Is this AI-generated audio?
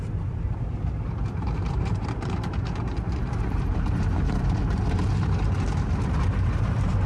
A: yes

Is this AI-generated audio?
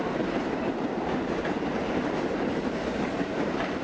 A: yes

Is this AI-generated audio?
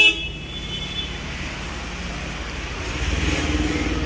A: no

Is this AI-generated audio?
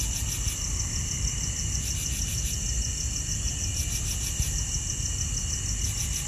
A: no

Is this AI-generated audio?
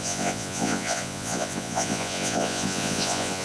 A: yes